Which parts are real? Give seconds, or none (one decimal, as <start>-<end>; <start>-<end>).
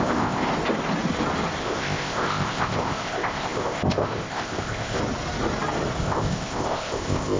0.5-1.6; 5.0-6.0